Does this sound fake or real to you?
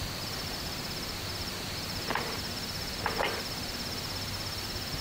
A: real